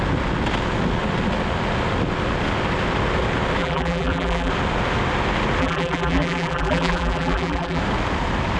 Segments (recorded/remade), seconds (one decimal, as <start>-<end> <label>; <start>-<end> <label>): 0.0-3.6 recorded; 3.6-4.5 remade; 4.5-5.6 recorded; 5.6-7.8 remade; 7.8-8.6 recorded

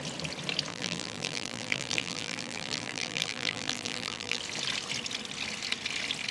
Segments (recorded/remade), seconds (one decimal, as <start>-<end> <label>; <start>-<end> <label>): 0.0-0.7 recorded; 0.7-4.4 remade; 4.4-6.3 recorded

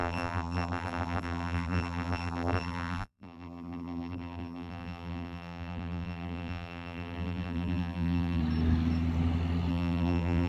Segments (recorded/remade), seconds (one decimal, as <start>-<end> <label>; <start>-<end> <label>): 0.0-8.4 remade; 8.4-9.7 recorded; 9.7-10.5 remade

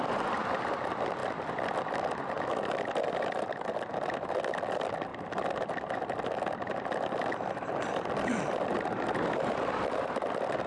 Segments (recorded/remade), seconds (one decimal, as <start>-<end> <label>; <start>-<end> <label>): 0.0-1.2 remade; 1.2-1.8 recorded; 1.8-10.7 remade